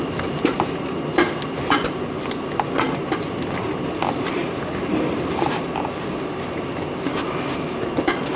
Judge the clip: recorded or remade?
recorded